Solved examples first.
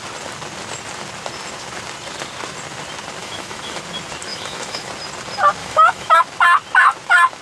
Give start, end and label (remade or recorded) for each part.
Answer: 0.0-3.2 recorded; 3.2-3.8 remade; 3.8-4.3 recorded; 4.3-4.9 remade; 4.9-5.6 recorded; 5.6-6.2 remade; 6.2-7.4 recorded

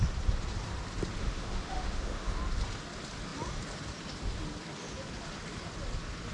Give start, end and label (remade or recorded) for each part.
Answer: 0.0-1.2 recorded; 1.2-2.4 remade; 2.4-6.3 recorded

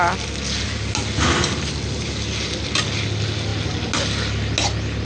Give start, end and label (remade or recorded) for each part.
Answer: 0.0-5.0 recorded

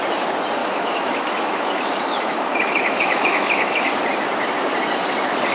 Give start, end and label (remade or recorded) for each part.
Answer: 0.0-0.6 recorded; 0.6-3.9 remade; 3.9-5.5 recorded

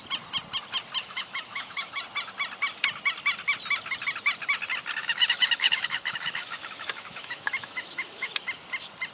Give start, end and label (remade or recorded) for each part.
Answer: 0.0-1.0 recorded; 1.0-2.0 remade; 2.0-5.0 recorded; 5.0-8.3 remade; 8.3-9.1 recorded

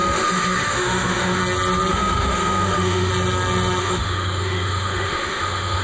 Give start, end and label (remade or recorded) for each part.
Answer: 0.0-1.4 remade; 1.4-1.9 recorded; 1.9-3.1 remade; 3.1-3.8 recorded; 3.8-5.8 remade

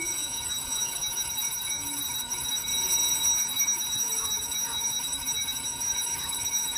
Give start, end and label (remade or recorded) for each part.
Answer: 0.0-2.7 remade; 2.7-3.4 recorded; 3.4-6.8 remade